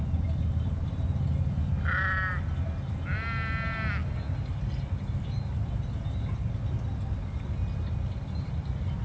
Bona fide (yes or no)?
yes